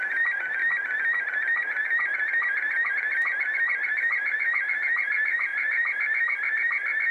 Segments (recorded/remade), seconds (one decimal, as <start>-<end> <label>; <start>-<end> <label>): 0.0-0.6 remade; 0.6-2.9 recorded; 2.9-5.5 remade; 5.5-7.1 recorded